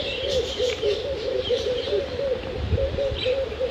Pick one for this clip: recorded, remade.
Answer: remade